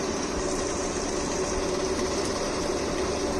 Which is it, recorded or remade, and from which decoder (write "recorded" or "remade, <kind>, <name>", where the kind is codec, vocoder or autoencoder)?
remade, vocoder, BigVGAN v2